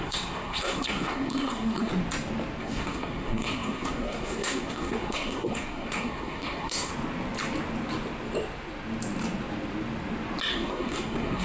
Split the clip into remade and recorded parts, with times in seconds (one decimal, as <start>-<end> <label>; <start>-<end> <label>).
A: 0.0-1.9 remade; 1.9-2.6 recorded; 2.6-6.9 remade; 6.9-10.5 recorded; 10.5-11.4 remade